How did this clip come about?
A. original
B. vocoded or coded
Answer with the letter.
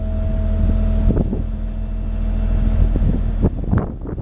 A